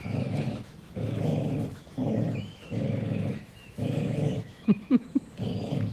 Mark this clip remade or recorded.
remade